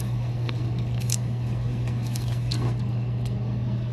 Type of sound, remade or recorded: remade